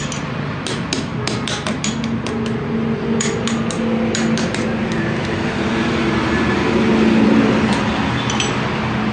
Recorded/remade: recorded